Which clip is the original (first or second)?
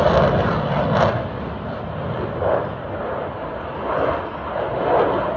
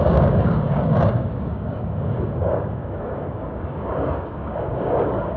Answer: first